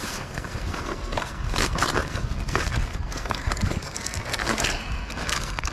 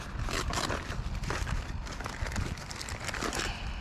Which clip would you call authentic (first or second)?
second